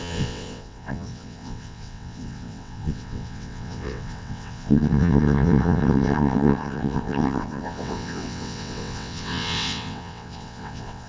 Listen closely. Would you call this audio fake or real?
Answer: fake